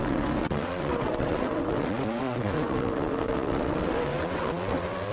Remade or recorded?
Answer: remade